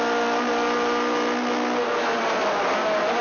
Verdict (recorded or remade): recorded